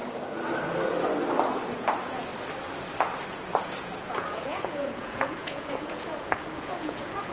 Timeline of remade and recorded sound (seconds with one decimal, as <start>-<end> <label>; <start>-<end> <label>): 0.0-1.7 recorded; 1.7-2.3 remade; 2.3-3.3 recorded; 3.3-7.3 remade